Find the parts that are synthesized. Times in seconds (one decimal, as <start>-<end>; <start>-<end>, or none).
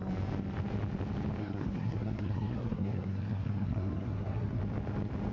1.4-4.6